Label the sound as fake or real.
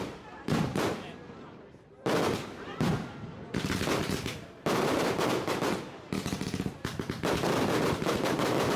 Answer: fake